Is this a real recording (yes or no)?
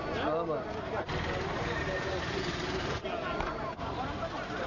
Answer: yes